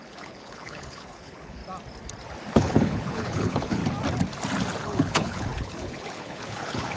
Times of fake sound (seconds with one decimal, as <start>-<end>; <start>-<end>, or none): 0.0-1.6; 2.5-3.8; 4.8-7.0